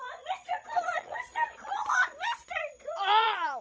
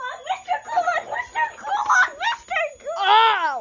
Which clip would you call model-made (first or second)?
first